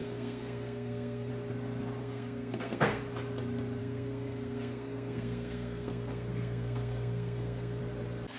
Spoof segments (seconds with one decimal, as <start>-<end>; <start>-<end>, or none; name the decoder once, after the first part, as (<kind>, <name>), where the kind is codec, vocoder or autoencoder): 0.0-1.3 (codec, SNAC); 2.0-3.0; 3.8-7.8